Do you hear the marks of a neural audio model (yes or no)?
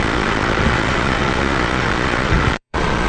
yes